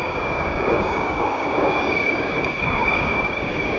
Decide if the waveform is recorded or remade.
remade